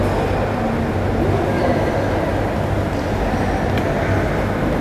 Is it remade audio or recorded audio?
recorded